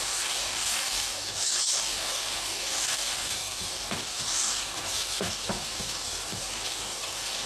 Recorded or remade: remade